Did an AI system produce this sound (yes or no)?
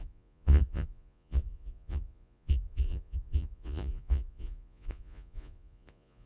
yes